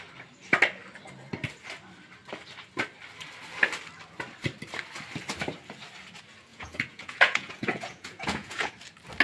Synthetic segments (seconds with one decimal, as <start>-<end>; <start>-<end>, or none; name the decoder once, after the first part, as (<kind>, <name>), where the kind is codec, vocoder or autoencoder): 6.5-8.7 (vocoder, Vocos)